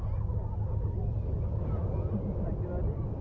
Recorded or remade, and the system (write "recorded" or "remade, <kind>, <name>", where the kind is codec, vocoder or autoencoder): recorded